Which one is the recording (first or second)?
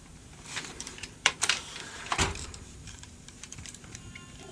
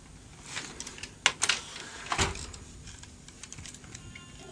second